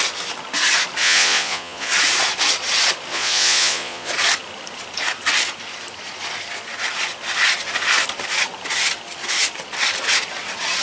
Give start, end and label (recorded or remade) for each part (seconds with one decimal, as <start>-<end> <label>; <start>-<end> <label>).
0.0-1.0 recorded; 1.0-1.9 remade; 1.9-3.1 recorded; 3.1-4.1 remade; 4.1-10.8 recorded